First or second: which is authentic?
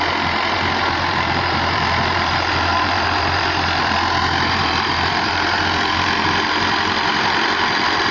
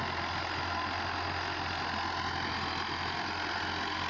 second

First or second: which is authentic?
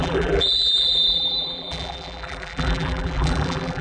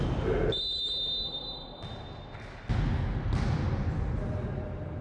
second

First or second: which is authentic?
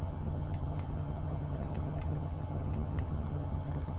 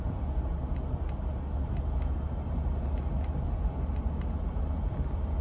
second